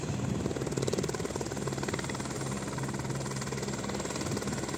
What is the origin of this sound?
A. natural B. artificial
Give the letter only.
A